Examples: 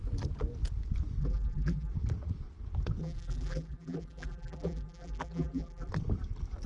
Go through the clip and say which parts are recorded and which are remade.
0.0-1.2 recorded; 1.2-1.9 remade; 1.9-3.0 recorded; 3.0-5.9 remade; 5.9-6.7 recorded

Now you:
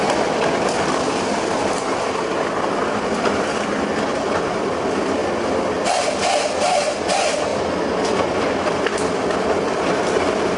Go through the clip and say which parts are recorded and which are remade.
0.0-4.1 recorded; 4.1-4.7 remade; 4.7-10.6 recorded

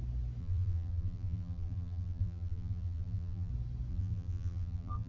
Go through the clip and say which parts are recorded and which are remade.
0.0-0.4 recorded; 0.4-3.5 remade; 3.5-3.9 recorded; 3.9-5.1 remade

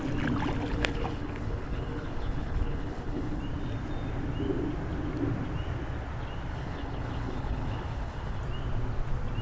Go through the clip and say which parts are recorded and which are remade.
0.0-0.7 recorded; 0.7-3.4 remade; 3.4-6.5 recorded; 6.5-8.4 remade; 8.4-9.4 recorded

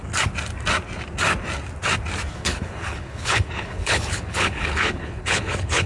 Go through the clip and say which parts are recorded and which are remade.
0.0-2.3 recorded; 2.3-5.9 remade